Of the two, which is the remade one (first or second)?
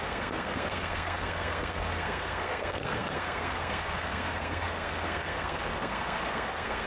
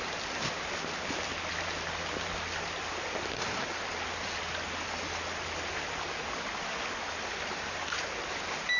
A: first